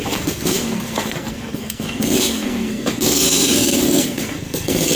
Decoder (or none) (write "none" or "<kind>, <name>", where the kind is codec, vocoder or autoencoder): codec, SNAC